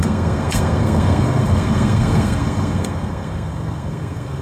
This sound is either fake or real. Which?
fake